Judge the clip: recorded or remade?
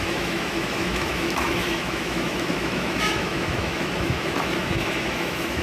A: remade